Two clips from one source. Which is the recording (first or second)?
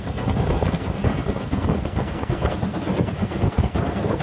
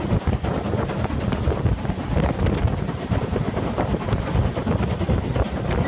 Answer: second